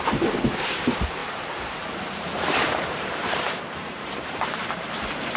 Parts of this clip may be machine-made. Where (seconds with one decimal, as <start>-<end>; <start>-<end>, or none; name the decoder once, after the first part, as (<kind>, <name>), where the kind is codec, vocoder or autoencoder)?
0.0-5.4 (vocoder, BigVGAN v2)